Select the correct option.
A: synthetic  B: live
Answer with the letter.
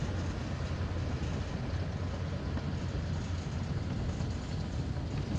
B